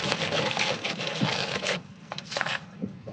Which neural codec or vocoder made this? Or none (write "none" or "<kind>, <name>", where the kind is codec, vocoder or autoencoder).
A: codec, SNAC